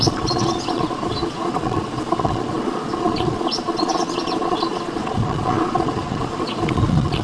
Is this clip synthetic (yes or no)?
yes